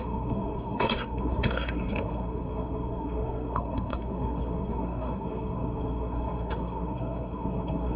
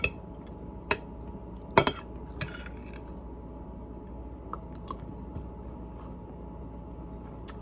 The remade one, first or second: first